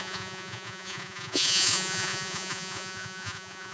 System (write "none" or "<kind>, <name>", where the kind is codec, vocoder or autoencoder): vocoder, Vocos